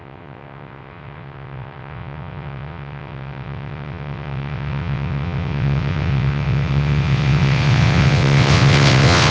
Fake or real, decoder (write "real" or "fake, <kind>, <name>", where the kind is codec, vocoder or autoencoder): fake, vocoder, WaveNeXt